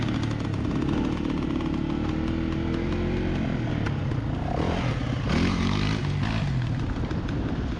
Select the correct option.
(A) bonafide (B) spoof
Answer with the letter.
A